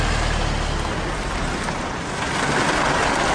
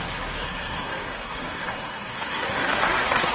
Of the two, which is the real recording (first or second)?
first